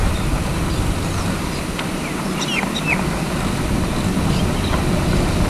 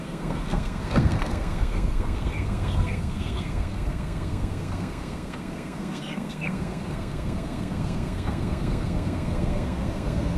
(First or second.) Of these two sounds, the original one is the first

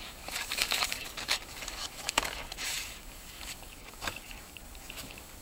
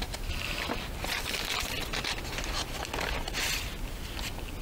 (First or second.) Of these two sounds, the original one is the second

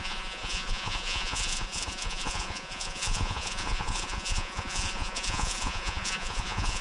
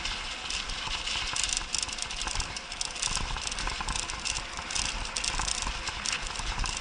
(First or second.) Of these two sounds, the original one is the second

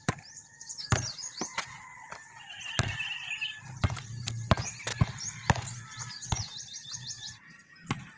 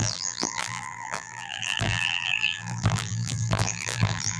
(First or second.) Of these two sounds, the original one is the first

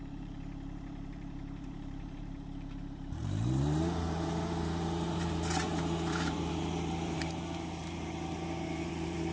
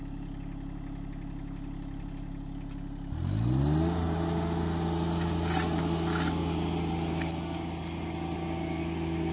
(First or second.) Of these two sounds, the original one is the second